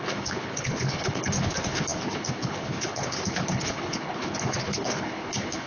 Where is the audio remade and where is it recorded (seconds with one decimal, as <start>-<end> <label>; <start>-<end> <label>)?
0.0-5.7 remade